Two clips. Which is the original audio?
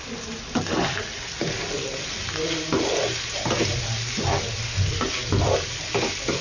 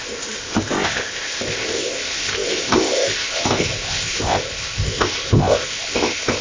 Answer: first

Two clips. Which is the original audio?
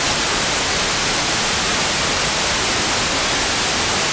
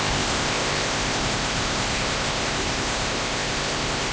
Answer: first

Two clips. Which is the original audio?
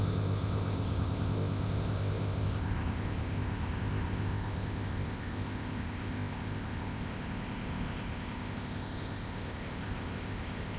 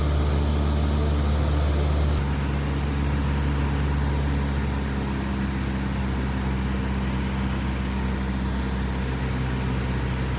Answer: second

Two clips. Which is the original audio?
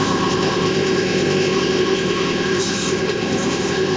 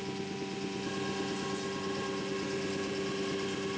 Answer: second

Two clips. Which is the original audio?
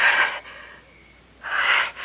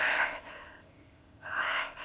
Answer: first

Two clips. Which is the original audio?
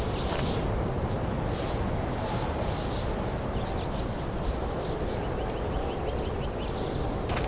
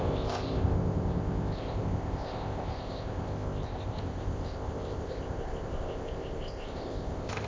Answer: first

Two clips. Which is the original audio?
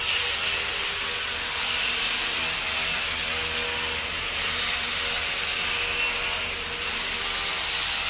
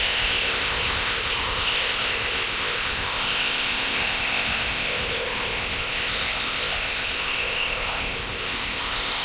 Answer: first